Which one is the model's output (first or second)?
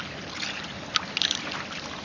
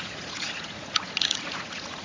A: second